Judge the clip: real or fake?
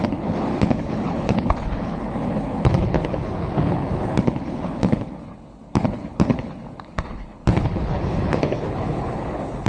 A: fake